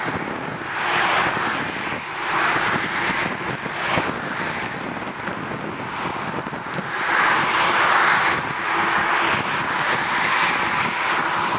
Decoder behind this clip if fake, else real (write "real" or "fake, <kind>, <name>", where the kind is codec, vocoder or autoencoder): real